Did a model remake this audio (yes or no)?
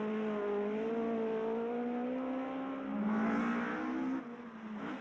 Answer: no